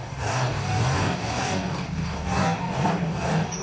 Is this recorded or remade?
remade